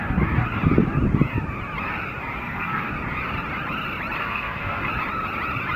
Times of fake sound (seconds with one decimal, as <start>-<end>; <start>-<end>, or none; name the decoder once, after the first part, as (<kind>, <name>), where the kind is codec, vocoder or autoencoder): 2.4-2.9 (codec, SNAC); 4.2-4.9